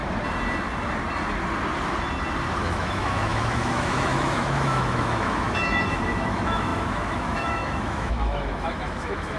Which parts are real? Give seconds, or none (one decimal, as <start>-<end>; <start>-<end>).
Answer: 0.0-2.6